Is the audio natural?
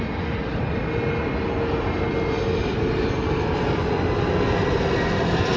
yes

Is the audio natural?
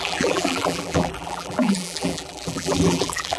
no